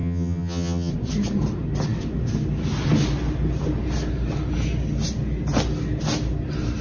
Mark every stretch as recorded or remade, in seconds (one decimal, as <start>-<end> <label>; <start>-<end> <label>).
0.0-0.9 remade; 0.9-6.8 recorded